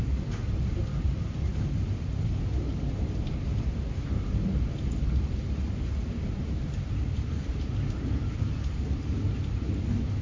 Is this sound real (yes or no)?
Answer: yes